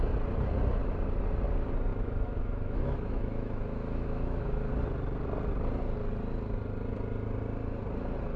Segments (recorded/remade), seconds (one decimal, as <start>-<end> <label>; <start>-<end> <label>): 0.0-1.9 recorded; 1.9-4.7 remade; 4.7-8.4 recorded